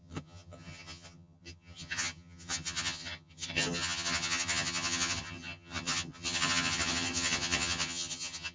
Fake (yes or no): yes